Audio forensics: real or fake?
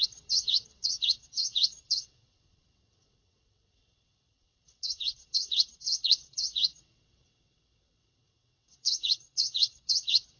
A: fake